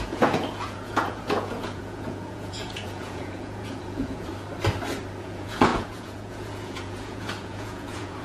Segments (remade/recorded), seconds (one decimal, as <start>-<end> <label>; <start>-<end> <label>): 0.0-4.3 remade; 4.3-5.2 recorded; 5.2-8.2 remade

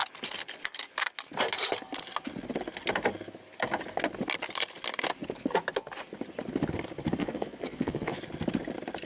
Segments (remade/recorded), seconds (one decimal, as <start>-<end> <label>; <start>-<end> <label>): 0.0-7.2 recorded; 7.2-8.2 remade; 8.2-9.1 recorded

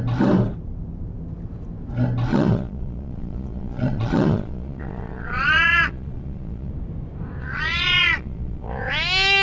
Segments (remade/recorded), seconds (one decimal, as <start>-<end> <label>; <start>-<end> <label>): 0.0-2.3 recorded; 2.3-6.7 remade; 6.7-7.4 recorded; 7.4-8.8 remade; 8.8-9.4 recorded